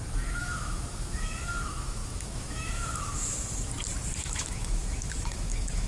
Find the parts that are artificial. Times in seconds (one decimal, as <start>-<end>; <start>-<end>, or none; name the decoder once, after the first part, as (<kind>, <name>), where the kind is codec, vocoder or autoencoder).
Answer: 0.0-3.7 (autoencoder, DAC-VAE); 4.2-5.9